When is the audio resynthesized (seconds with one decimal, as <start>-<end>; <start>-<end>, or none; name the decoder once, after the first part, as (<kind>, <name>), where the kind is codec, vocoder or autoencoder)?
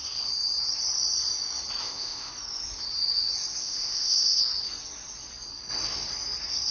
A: 1.8-2.3 (codec, ZipCodec); 3.6-4.4